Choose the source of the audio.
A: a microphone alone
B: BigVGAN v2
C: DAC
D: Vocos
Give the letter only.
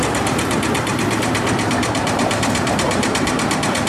B